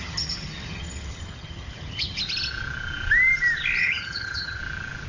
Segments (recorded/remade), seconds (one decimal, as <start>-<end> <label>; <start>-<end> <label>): 0.0-2.2 remade; 2.2-3.8 recorded; 3.8-4.6 remade; 4.6-5.1 recorded